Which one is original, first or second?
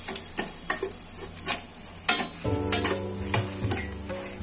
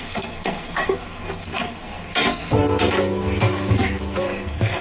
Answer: first